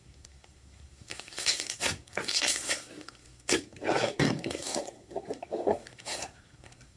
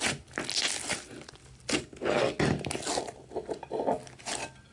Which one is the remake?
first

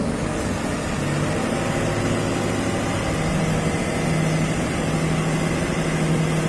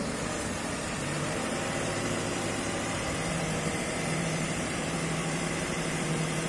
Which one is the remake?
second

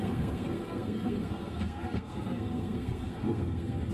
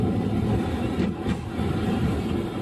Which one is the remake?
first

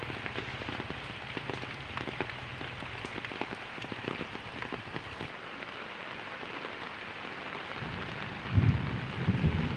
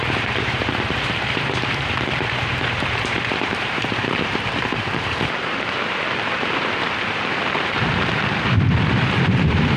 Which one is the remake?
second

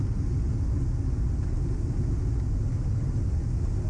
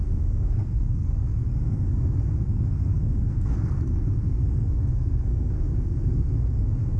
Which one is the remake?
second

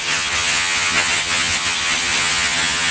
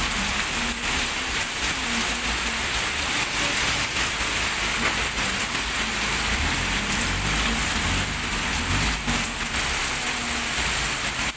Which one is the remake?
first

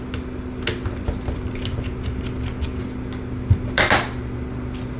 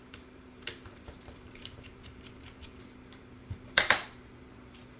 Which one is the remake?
second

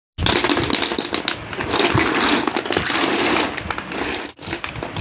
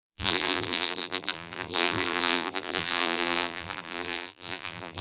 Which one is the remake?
second